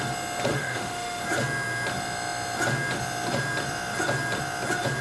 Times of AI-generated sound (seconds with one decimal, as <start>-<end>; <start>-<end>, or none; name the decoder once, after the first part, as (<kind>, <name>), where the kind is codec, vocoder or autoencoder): 0.5-1.2 (autoencoder, DAC-VAE)